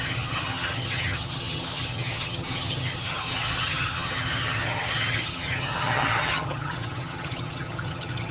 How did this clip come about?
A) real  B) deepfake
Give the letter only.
B